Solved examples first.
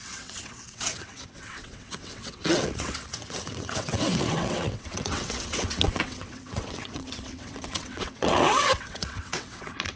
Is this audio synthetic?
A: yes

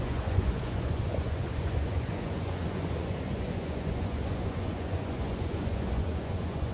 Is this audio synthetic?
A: yes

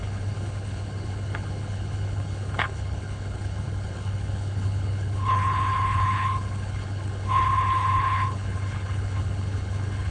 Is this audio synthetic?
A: yes